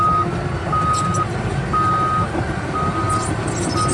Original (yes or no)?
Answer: yes